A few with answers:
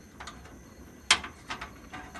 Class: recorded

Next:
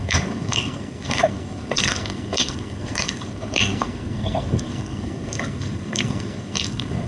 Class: remade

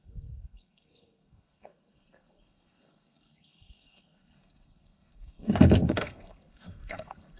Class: remade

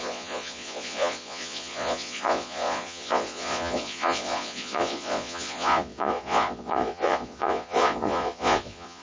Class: remade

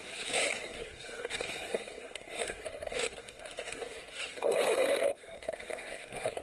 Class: remade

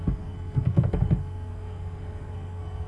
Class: remade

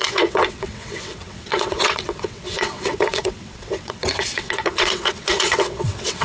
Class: remade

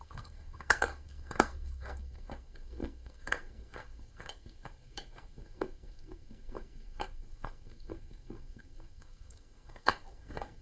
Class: remade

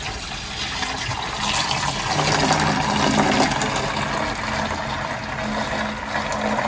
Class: recorded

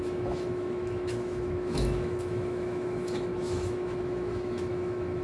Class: remade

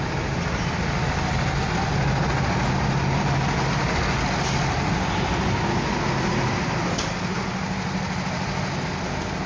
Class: recorded